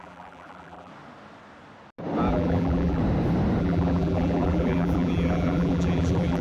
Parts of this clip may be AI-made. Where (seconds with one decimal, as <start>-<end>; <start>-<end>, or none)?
0.0-0.9; 2.3-3.0; 3.6-6.4